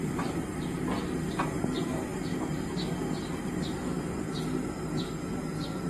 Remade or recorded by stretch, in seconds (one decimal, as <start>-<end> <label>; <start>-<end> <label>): 0.0-5.9 recorded